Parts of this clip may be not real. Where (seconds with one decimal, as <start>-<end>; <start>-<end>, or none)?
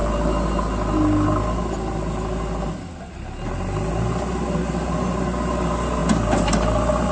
none